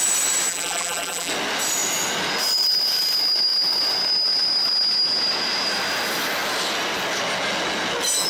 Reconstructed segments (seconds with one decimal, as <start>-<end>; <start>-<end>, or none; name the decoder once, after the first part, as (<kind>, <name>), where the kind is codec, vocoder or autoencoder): 0.5-1.3 (vocoder, BigVGAN v2)